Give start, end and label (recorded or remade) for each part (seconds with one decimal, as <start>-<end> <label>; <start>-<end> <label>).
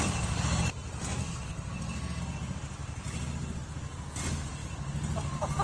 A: 0.0-1.2 recorded; 1.2-2.2 remade; 2.2-5.6 recorded